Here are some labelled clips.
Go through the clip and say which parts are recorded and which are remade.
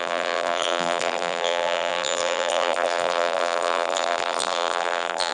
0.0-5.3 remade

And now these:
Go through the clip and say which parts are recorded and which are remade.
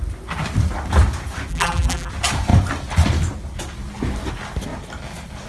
0.0-1.5 recorded; 1.5-2.1 remade; 2.1-5.5 recorded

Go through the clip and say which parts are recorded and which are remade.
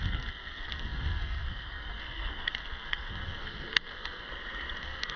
0.0-4.3 remade; 4.3-4.8 recorded; 4.8-5.2 remade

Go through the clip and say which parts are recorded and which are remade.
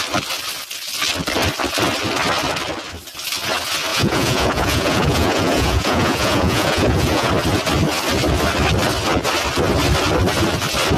0.0-3.9 recorded; 3.9-7.3 remade; 7.3-11.0 recorded